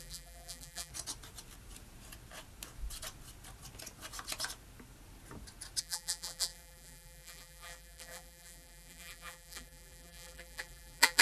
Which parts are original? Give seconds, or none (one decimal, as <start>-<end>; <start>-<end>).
0.9-5.8